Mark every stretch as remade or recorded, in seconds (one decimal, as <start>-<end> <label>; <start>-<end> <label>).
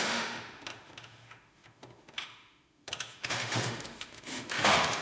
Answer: 0.0-5.0 remade